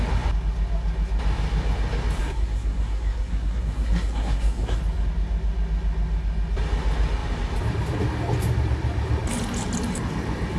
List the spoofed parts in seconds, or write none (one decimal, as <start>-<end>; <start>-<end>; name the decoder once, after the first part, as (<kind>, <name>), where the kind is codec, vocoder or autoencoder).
2.2-4.8 (codec, SNAC)